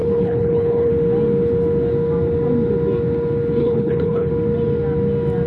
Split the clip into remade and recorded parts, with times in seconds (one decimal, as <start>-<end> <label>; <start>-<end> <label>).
0.0-0.9 remade; 0.9-3.6 recorded; 3.6-4.3 remade; 4.3-5.5 recorded

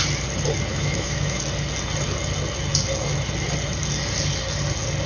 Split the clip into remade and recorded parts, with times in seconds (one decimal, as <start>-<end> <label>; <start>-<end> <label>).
0.0-0.7 recorded; 0.7-1.4 remade; 1.4-5.1 recorded

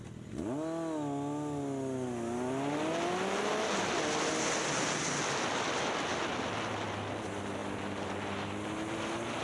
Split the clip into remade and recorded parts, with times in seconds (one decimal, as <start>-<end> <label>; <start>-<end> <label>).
0.0-9.4 recorded

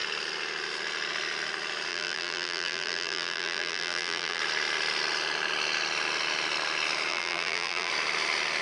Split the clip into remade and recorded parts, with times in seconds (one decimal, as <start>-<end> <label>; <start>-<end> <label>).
0.0-1.9 recorded; 1.9-4.4 remade; 4.4-7.1 recorded; 7.1-7.9 remade; 7.9-8.6 recorded

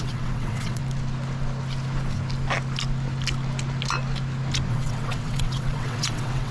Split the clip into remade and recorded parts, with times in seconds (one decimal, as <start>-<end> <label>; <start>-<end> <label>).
0.0-0.8 remade; 0.8-4.7 recorded; 4.7-6.5 remade